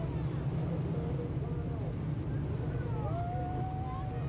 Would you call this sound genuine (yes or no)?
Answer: yes